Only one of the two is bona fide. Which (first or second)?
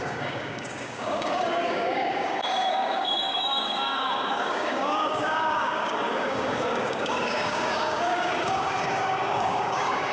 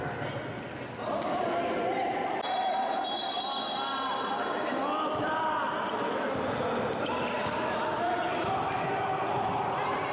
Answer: second